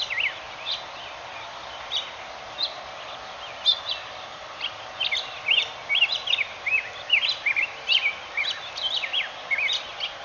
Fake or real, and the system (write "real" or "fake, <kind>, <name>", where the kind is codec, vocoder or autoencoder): real